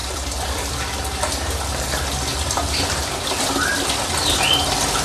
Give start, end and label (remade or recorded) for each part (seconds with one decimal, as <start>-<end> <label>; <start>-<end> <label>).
0.0-0.7 remade; 0.7-2.3 recorded; 2.3-4.6 remade; 4.6-5.0 recorded